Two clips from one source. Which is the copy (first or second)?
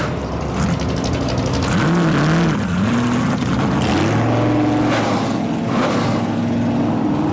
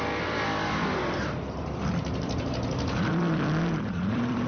second